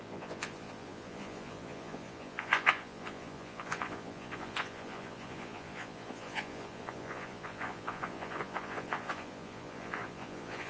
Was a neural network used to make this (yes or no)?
yes